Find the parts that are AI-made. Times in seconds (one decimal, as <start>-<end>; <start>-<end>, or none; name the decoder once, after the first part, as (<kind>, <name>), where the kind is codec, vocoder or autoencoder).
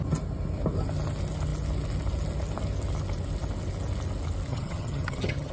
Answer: 4.5-5.5 (vocoder, HiFi-GAN)